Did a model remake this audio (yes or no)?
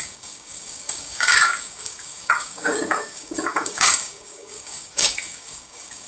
yes